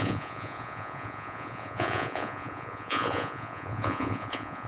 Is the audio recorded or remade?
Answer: remade